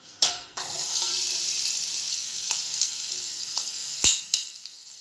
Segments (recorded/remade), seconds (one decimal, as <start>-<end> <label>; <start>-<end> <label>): 0.0-1.1 remade; 1.1-2.1 recorded; 2.1-5.0 remade